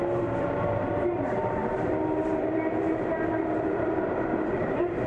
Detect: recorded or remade remade